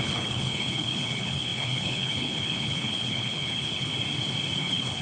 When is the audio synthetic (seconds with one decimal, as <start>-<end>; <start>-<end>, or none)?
0.0-3.9; 4.6-5.0